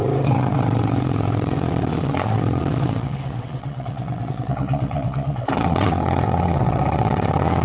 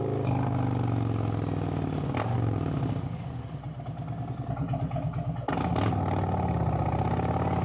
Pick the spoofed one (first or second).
first